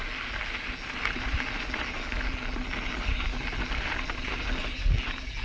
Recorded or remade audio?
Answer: recorded